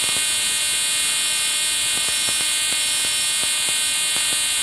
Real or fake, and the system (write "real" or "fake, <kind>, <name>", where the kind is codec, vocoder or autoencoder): real